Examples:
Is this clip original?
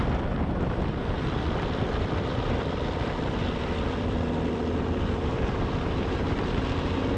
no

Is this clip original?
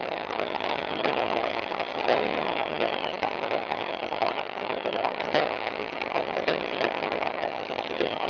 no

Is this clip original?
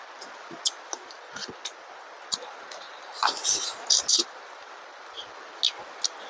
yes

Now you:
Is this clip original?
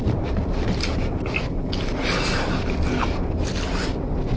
yes